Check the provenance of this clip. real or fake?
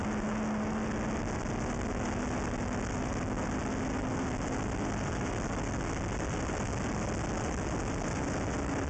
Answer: real